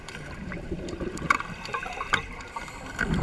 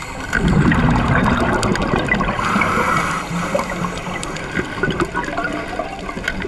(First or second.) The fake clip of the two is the first